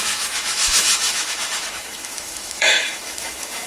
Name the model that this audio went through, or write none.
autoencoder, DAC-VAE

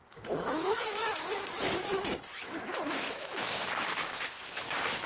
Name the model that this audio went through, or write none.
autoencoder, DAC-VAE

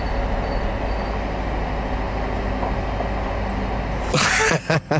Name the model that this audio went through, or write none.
none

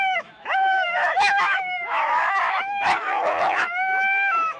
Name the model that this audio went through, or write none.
autoencoder, DAC-VAE